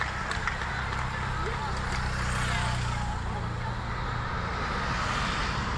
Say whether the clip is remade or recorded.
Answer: recorded